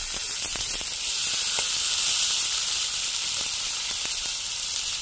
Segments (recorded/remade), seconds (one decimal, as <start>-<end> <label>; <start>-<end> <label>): 0.0-5.0 recorded

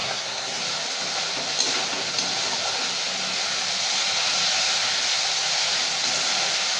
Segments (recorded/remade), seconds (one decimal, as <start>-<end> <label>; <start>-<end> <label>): 0.0-0.6 remade; 0.6-6.8 recorded

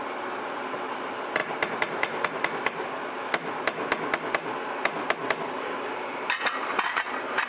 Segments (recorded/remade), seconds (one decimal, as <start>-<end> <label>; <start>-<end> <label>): 0.0-7.5 recorded

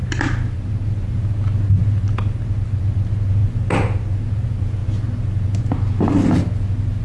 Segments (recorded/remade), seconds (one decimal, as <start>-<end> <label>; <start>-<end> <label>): 0.0-7.0 recorded

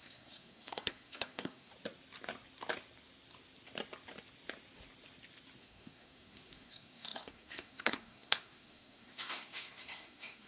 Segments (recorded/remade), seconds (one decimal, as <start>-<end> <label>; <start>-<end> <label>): 0.0-1.7 remade; 1.7-5.6 recorded; 5.6-10.5 remade

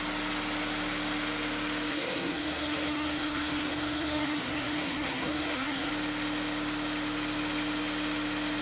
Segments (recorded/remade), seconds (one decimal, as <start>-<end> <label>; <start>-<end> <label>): 0.0-1.9 recorded; 1.9-5.9 remade; 5.9-8.6 recorded

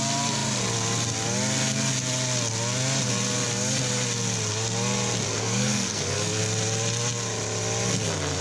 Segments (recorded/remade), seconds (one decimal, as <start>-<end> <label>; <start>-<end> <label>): 0.0-5.3 recorded; 5.3-6.4 remade; 6.4-8.4 recorded

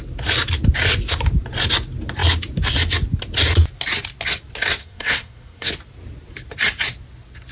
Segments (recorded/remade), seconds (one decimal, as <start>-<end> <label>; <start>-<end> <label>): 0.0-4.8 recorded; 4.8-5.7 remade; 5.7-7.5 recorded